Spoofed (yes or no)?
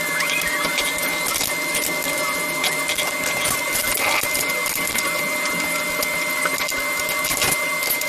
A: no